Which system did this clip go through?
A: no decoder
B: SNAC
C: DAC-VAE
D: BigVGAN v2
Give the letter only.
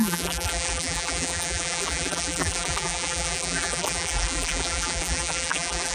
D